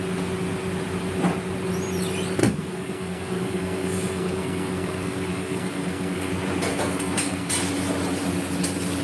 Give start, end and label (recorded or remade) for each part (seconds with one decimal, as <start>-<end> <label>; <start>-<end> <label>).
0.0-2.4 recorded; 2.4-6.3 remade; 6.3-6.7 recorded; 6.7-7.5 remade; 7.5-9.0 recorded